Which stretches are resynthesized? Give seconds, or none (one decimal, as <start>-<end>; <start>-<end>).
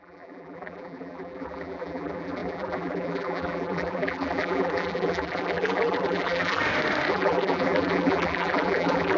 0.0-6.6; 7.1-9.2